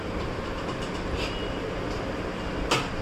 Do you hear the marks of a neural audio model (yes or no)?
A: no